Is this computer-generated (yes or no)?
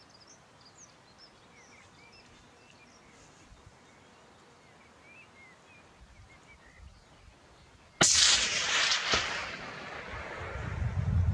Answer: no